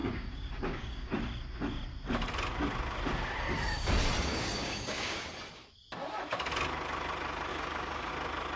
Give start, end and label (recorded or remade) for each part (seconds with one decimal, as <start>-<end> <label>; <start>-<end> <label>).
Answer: 0.0-1.1 remade; 1.1-4.3 recorded; 4.3-5.3 remade; 5.3-7.5 recorded; 7.5-8.1 remade; 8.1-8.6 recorded